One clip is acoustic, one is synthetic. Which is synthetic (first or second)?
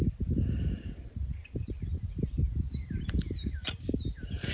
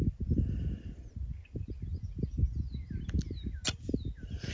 first